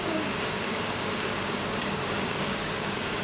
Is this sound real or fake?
fake